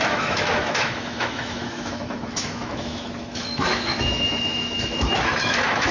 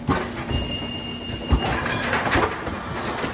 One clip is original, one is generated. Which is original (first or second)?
second